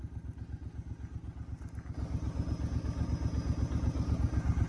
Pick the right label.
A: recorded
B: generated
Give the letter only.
A